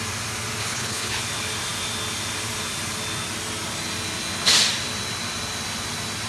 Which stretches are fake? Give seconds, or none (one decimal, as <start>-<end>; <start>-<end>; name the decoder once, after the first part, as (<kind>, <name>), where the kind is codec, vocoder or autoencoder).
0.6-1.2 (codec, HILCodec)